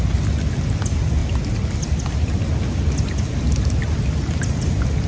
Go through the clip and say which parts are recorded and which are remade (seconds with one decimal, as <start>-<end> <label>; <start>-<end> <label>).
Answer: 0.0-5.1 recorded